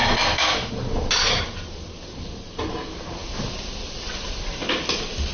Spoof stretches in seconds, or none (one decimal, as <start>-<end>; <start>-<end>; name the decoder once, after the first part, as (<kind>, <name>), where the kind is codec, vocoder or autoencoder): 0.0-0.7 (autoencoder, DAC-VAE)